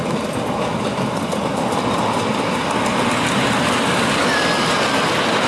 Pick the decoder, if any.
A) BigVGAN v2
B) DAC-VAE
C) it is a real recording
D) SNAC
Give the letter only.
C